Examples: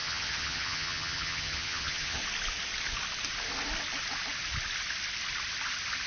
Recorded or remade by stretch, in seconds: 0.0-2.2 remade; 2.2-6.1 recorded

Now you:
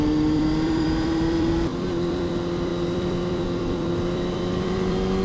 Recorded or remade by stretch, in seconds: 0.0-5.2 remade